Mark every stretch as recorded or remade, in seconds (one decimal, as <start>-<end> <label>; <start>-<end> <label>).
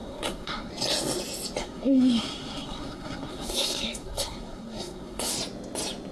0.0-0.7 remade; 0.7-1.6 recorded; 1.6-5.3 remade; 5.3-6.1 recorded